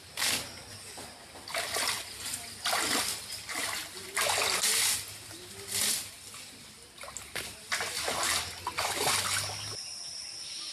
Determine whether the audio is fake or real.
real